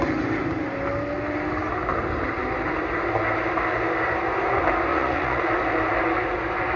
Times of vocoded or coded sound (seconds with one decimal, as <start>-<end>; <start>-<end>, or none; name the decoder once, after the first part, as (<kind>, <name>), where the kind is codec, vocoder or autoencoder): 4.9-5.4 (vocoder, Vocos)